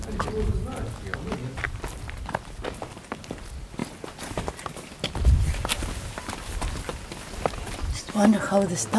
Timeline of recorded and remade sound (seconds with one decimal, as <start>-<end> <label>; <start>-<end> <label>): 0.0-9.0 recorded